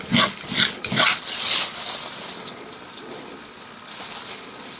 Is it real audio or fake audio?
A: real